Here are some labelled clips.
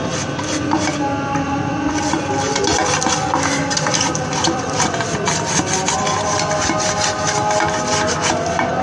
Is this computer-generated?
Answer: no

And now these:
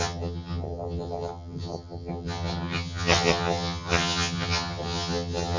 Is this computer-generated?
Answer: yes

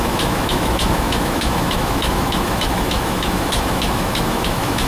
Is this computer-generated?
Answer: yes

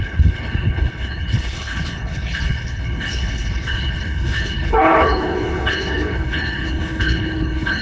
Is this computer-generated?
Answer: yes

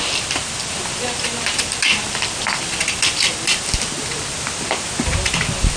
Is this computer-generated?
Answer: no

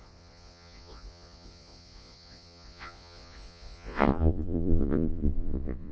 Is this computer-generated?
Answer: yes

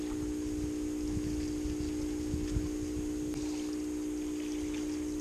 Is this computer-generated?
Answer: no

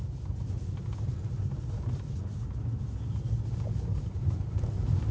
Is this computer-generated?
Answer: no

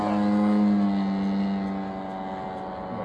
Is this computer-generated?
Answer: no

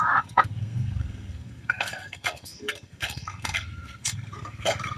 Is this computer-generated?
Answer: yes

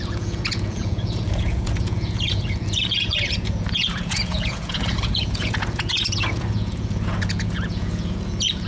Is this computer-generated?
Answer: yes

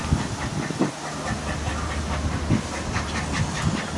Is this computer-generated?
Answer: no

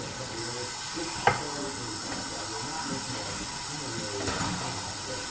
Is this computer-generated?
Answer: no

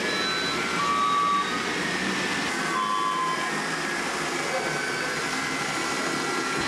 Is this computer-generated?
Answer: no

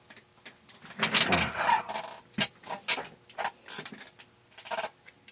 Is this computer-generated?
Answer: no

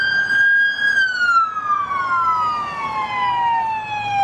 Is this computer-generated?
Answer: no